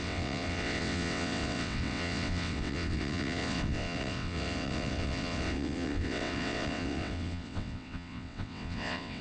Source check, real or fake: fake